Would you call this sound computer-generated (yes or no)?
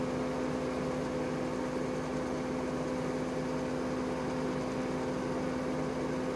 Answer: no